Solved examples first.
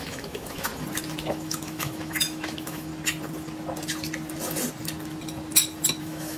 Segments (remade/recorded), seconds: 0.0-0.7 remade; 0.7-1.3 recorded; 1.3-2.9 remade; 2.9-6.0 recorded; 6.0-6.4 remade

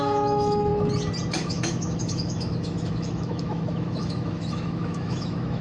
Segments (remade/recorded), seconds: 0.0-0.7 remade; 0.7-1.3 recorded; 1.3-5.6 remade

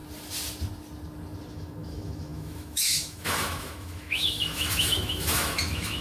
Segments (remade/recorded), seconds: 0.0-1.5 recorded; 1.5-6.0 remade

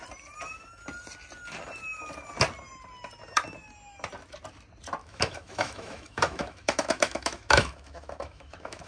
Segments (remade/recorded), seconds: 0.0-5.0 recorded; 5.0-8.9 remade

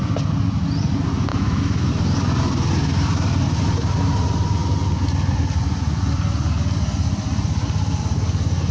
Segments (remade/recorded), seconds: 0.0-1.3 recorded; 1.3-1.9 remade; 1.9-8.7 recorded

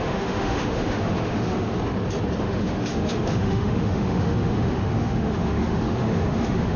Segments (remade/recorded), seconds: 0.0-1.7 remade; 1.7-2.4 recorded; 2.4-6.8 remade

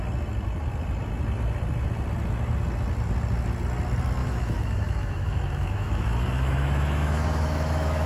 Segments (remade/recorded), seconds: 0.0-4.2 recorded; 4.2-8.1 remade